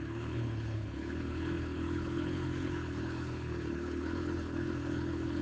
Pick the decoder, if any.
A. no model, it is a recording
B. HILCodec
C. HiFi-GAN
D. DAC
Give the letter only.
B